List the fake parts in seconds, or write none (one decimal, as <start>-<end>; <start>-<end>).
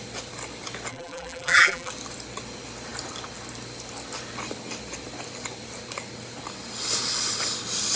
0.9-1.9